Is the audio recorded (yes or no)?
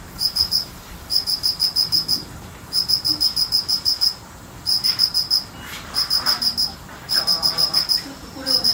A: no